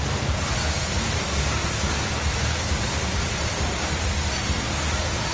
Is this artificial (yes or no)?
no